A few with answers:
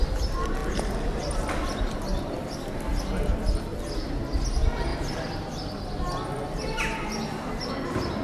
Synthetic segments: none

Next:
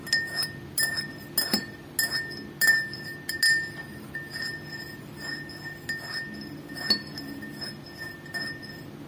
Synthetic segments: none

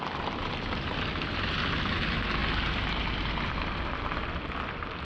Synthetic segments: none

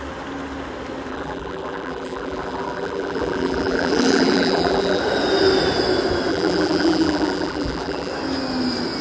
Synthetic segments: 1.1-5.0 (vocoder, BigVGAN v2); 6.3-8.1

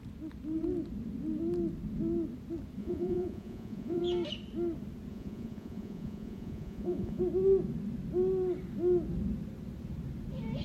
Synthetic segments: 2.8-4.0 (vocoder, Vocos); 5.1-7.2

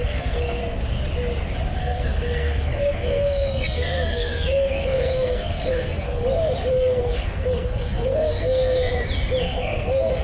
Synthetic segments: 0.0-0.6 (codec, SNAC); 1.8-6.2; 6.7-8.9; 9.4-10.2

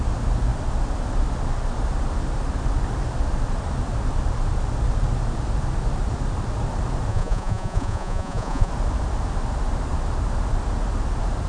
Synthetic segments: 7.1-8.7 (vocoder, Vocos)

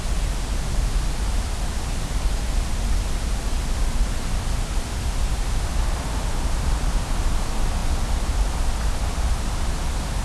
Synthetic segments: none